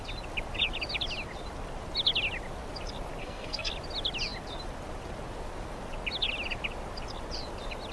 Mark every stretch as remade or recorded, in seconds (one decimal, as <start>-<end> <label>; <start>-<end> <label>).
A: 0.0-3.2 recorded; 3.2-3.7 remade; 3.7-7.9 recorded